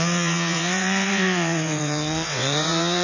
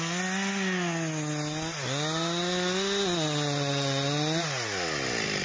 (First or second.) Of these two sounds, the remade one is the first